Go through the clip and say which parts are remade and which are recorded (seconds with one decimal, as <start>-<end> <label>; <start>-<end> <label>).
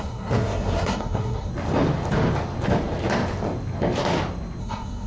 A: 0.0-1.5 remade; 1.5-4.6 recorded; 4.6-5.1 remade